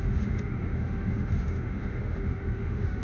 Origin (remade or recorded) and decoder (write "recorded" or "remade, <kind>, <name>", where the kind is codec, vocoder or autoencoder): remade, autoencoder, DAC-VAE